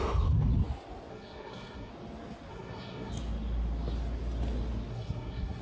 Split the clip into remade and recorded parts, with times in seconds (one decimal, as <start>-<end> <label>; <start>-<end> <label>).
0.0-1.1 recorded; 1.1-1.9 remade; 1.9-2.5 recorded; 2.5-3.1 remade; 3.1-4.9 recorded; 4.9-5.6 remade